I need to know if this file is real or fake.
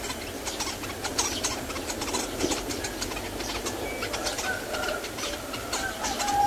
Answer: real